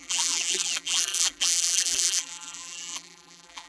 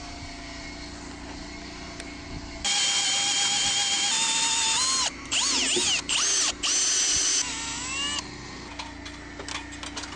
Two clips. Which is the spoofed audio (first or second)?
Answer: first